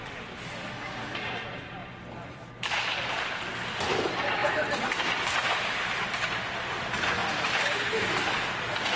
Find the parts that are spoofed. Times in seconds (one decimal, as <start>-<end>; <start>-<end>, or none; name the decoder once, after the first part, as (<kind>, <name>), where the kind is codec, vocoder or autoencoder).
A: 1.8-3.5 (vocoder, BigVGAN v2); 4.4-5.0; 7.2-8.1